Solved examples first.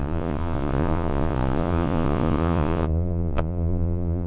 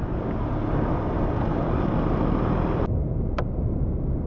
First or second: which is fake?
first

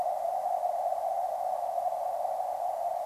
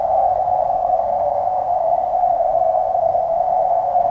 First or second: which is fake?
second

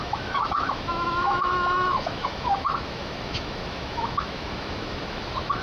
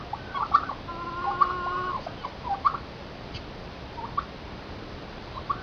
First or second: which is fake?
first